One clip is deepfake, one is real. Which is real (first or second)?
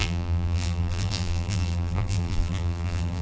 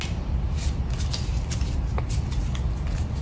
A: second